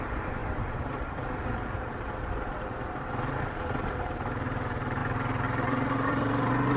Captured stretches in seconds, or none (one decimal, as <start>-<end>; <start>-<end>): none